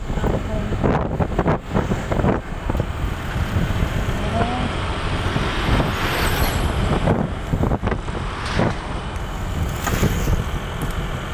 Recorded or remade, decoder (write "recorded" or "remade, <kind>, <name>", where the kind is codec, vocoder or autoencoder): recorded